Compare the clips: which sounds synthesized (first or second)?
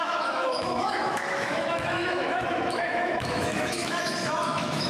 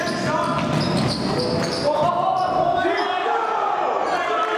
first